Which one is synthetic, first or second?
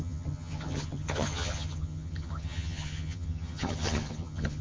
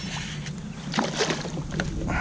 first